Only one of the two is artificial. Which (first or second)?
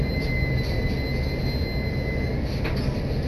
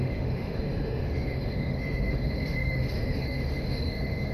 second